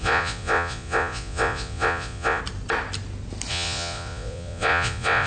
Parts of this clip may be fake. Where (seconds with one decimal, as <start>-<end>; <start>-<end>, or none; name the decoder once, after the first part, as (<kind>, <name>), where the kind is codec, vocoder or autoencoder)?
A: 0.0-2.4 (vocoder, Vocos); 3.5-5.3

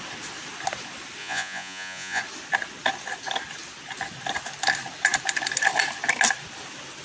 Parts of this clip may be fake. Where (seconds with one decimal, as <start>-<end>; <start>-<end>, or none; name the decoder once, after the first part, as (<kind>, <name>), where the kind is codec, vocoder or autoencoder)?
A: 1.2-2.2 (vocoder, Vocos)

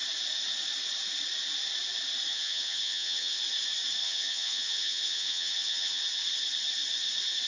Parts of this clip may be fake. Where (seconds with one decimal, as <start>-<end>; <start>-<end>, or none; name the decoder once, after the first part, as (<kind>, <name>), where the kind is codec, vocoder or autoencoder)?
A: 2.3-3.4 (vocoder, HiFi-GAN); 4.0-6.0

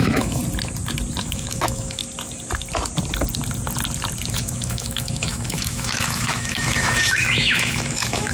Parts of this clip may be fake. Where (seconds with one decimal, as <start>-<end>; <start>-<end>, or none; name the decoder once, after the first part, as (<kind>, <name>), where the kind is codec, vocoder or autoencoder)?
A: 0.0-0.4 (autoencoder, DAC-VAE); 1.2-2.0; 4.3-8.3

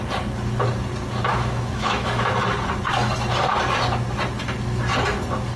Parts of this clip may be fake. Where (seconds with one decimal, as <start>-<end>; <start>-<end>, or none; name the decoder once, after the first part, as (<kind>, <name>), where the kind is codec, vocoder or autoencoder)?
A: 1.3-2.3 (autoencoder, DAC-VAE)

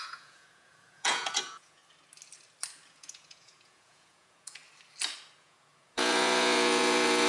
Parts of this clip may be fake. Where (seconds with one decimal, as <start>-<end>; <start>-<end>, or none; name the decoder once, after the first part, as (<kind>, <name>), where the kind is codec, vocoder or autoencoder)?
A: 0.0-1.8 (vocoder, Vocos); 2.9-4.6; 5.4-7.3